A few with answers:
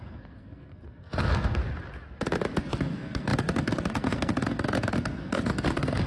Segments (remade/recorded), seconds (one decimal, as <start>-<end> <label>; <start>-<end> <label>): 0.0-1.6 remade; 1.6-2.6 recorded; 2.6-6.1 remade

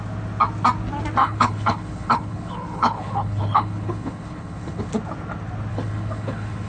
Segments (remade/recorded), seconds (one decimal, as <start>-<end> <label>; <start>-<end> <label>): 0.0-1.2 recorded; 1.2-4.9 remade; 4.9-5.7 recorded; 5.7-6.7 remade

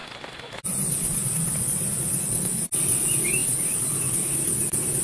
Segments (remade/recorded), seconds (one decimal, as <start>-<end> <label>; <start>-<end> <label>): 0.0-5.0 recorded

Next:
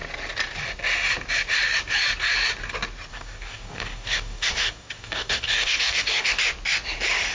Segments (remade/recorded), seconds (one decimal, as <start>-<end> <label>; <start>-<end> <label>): 0.0-3.1 recorded; 3.1-6.4 remade; 6.4-7.3 recorded